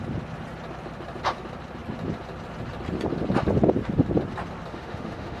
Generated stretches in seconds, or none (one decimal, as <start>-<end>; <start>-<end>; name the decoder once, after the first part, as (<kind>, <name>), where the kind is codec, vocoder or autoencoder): 4.7-5.4 (autoencoder, DAC-VAE)